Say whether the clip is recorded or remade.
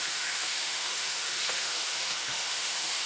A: remade